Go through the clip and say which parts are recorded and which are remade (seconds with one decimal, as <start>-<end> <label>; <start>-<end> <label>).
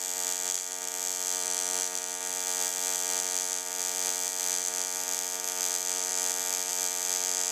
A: 0.0-7.5 recorded